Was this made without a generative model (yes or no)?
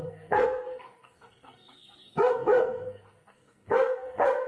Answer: no